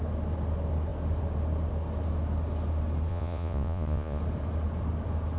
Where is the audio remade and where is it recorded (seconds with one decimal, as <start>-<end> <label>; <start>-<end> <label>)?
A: 0.0-3.1 recorded; 3.1-4.2 remade; 4.2-5.4 recorded